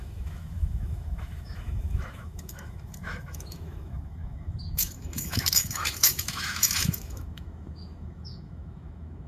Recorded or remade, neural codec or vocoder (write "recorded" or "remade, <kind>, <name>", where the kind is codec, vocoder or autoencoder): remade, autoencoder, DAC-VAE